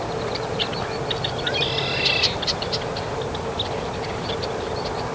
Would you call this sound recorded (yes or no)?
yes